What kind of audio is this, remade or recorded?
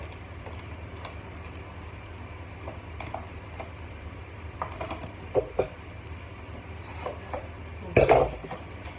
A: recorded